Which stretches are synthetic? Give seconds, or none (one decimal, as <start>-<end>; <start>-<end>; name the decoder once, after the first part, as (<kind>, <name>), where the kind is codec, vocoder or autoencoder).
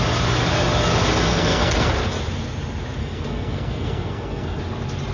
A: 1.3-1.9 (codec, SNAC); 3.0-4.6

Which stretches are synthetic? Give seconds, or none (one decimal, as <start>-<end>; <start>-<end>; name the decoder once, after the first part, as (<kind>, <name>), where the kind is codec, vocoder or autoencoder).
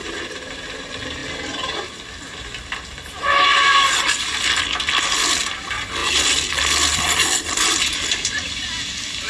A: none